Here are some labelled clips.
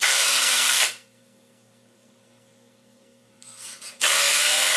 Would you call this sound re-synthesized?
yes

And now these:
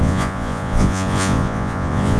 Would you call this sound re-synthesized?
yes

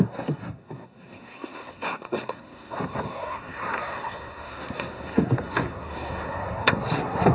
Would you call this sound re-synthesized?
yes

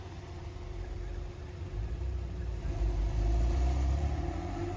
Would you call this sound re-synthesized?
yes